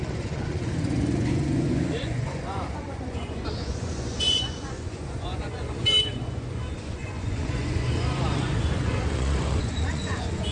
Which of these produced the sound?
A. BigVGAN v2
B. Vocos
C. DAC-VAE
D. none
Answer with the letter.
B